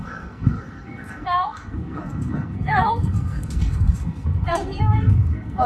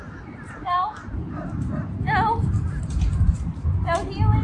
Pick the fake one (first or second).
first